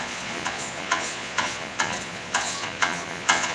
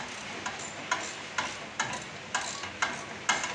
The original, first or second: second